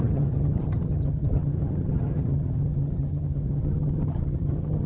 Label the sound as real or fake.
fake